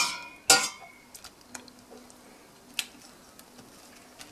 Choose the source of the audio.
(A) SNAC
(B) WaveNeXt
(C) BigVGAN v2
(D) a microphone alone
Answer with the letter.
D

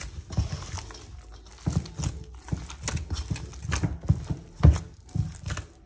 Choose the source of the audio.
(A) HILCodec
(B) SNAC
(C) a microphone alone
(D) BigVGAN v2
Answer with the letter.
C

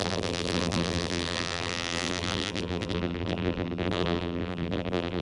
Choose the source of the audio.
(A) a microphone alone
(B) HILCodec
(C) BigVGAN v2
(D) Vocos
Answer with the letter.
C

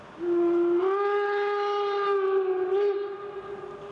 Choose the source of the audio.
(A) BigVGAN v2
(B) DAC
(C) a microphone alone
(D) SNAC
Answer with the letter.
C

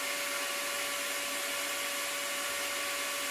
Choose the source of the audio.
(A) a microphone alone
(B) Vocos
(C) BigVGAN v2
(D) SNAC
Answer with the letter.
A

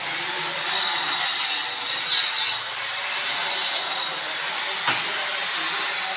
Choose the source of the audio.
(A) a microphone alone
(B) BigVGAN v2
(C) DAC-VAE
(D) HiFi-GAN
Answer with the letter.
A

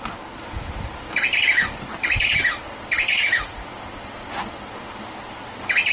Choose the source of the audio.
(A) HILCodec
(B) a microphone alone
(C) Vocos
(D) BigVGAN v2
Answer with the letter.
B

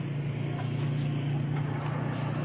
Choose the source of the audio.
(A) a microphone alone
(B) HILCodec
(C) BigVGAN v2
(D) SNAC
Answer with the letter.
A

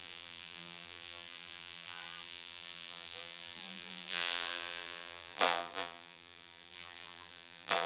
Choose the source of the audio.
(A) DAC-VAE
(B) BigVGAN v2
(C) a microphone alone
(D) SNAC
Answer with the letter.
B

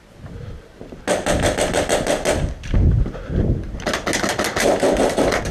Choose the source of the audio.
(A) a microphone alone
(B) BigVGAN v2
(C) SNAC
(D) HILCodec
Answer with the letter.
A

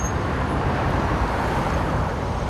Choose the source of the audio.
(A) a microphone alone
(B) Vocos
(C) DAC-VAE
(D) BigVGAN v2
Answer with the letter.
D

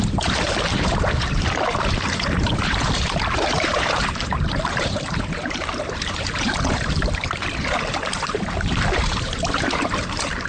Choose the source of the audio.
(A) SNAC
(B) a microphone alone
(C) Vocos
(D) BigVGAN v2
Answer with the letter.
D